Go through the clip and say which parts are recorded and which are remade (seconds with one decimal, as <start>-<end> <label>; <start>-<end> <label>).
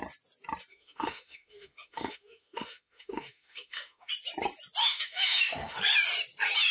0.0-0.7 recorded; 0.7-4.1 remade; 4.1-4.8 recorded; 4.8-5.8 remade; 5.8-6.7 recorded